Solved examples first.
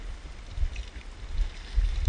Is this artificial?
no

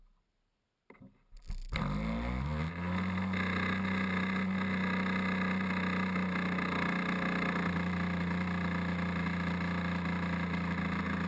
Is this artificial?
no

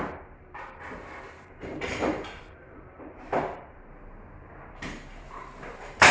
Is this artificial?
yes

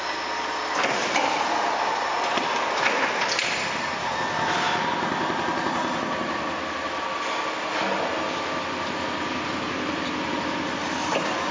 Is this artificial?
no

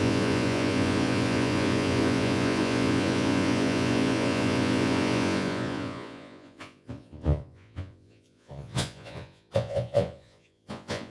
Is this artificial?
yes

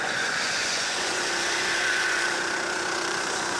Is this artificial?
yes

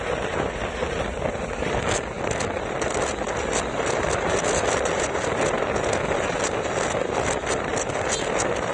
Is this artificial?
no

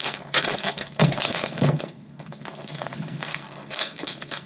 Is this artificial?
yes